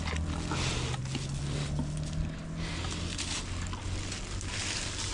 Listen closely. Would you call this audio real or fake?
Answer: real